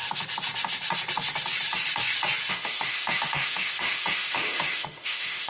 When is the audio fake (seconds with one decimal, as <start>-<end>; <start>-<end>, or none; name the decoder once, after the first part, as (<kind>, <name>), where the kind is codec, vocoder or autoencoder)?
2.5-5.5 (autoencoder, DAC-VAE)